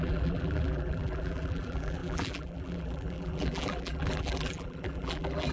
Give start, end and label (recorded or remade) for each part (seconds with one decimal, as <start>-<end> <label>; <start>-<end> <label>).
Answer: 0.0-5.5 remade